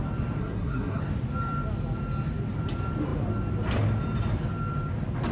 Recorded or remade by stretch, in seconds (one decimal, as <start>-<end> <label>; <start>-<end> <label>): 0.0-0.4 recorded; 0.4-1.0 remade; 1.0-5.3 recorded